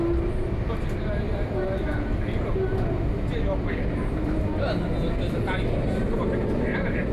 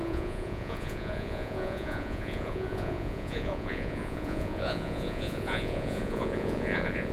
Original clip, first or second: first